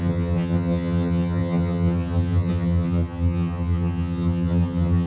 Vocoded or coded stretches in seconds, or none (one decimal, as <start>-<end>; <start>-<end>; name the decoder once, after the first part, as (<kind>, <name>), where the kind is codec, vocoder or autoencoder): 0.0-5.1 (vocoder, HiFi-GAN)